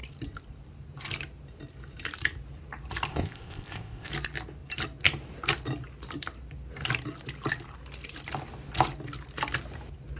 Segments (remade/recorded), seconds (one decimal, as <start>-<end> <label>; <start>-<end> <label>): 0.0-3.1 recorded; 3.1-4.1 remade; 4.1-10.2 recorded